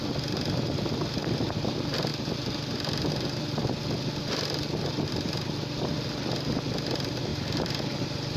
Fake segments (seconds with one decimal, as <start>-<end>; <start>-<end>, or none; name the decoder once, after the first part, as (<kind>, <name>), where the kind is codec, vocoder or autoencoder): 7.3-8.4 (vocoder, BigVGAN v2)